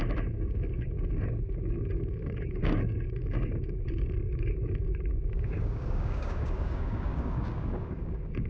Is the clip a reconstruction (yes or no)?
yes